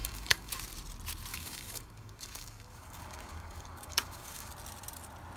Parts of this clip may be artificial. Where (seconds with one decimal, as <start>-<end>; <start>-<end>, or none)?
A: 0.0-0.5; 1.3-4.5